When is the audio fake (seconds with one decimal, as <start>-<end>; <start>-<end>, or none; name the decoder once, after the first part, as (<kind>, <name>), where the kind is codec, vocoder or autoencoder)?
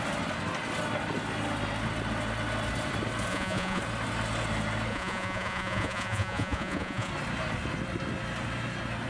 3.3-3.8 (vocoder, Vocos); 4.9-7.1